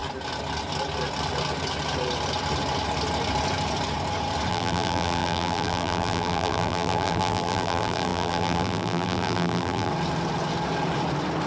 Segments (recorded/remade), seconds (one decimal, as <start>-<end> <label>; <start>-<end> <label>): 0.0-4.5 recorded; 4.5-9.9 remade; 9.9-11.5 recorded